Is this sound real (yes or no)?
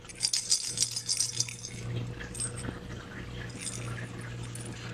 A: yes